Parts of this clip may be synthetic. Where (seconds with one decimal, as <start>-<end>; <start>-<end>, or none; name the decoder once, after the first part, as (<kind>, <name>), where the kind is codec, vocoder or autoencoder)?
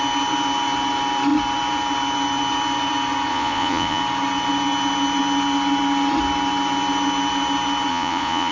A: 3.3-4.0 (vocoder, Vocos); 7.9-8.5